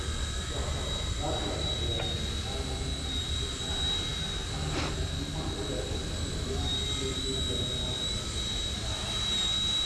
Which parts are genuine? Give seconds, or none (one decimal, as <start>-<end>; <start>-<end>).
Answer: 0.0-9.9